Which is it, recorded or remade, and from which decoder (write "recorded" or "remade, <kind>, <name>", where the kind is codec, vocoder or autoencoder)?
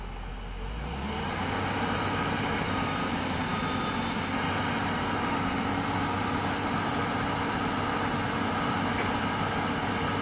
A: recorded